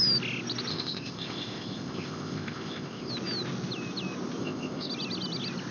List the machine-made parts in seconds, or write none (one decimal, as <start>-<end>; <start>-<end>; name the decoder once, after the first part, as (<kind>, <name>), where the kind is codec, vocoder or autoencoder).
0.7-3.1 (codec, ZipCodec); 4.4-4.9